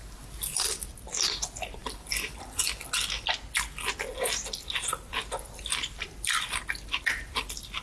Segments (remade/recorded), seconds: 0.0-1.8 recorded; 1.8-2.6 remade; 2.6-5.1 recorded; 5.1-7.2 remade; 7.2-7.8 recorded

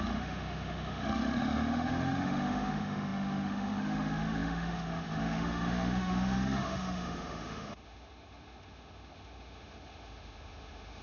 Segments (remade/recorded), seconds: 0.0-11.0 remade

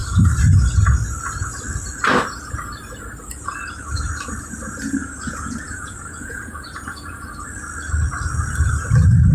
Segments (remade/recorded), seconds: 0.0-5.0 recorded; 5.0-7.3 remade; 7.3-9.3 recorded

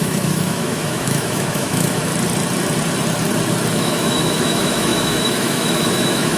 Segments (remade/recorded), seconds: 0.0-2.1 remade; 2.1-3.7 recorded; 3.7-6.4 remade

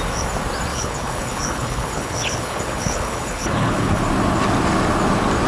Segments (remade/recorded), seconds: 0.0-0.7 recorded; 0.7-4.0 remade; 4.0-5.5 recorded

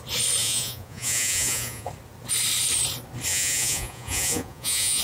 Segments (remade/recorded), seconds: 0.0-0.4 recorded; 0.4-1.9 remade; 1.9-3.3 recorded; 3.3-5.0 remade

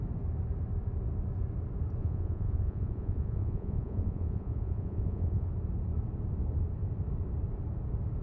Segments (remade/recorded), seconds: 0.0-2.0 recorded; 2.0-5.5 remade; 5.5-8.2 recorded

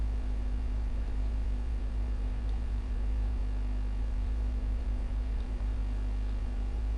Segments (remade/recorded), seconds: 0.0-3.4 remade; 3.4-4.0 recorded; 4.0-5.8 remade; 5.8-6.4 recorded; 6.4-7.0 remade